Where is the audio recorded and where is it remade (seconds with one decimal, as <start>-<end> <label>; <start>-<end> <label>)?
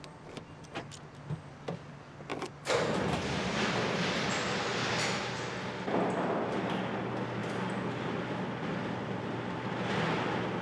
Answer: 0.0-2.3 recorded; 2.3-5.2 remade; 5.2-10.6 recorded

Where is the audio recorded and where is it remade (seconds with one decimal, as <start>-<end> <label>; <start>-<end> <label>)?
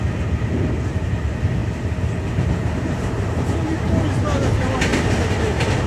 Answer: 0.0-1.6 remade; 1.6-2.3 recorded; 2.3-5.9 remade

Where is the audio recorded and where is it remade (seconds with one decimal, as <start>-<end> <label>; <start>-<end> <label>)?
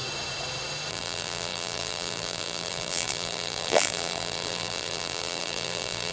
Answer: 0.0-0.9 recorded; 0.9-6.1 remade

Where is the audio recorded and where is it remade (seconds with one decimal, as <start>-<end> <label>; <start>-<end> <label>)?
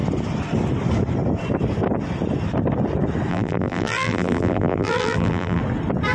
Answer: 0.0-3.3 recorded; 3.3-5.6 remade; 5.6-6.1 recorded